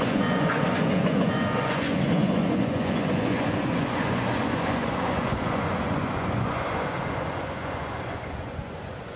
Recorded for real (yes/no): no